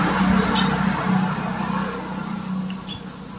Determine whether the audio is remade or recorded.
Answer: remade